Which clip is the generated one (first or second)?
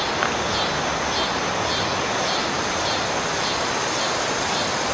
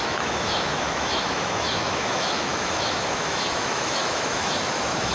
second